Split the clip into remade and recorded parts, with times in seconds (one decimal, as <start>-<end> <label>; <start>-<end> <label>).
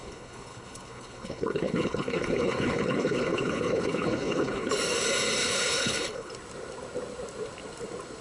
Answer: 0.0-4.7 remade; 4.7-5.4 recorded; 5.4-6.3 remade; 6.3-8.2 recorded